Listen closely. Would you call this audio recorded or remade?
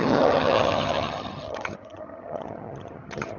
remade